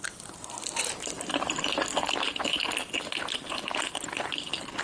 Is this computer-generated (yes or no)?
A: no